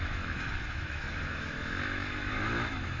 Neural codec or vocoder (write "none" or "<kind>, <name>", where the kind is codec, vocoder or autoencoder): autoencoder, DAC-VAE